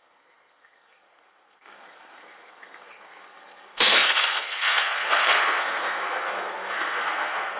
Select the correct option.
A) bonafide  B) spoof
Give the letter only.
B